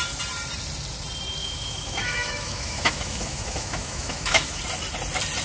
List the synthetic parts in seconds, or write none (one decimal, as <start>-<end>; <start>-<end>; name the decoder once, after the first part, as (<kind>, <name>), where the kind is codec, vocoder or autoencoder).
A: 1.4-4.6 (autoencoder, DAC-VAE)